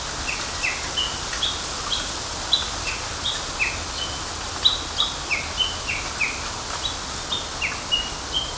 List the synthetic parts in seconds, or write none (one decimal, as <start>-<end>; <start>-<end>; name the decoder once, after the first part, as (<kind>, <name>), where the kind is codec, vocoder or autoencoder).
none